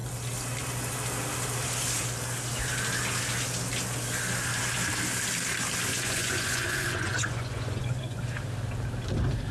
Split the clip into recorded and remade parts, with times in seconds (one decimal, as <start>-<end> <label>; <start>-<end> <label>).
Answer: 0.0-5.9 recorded; 5.9-8.2 remade; 8.2-9.5 recorded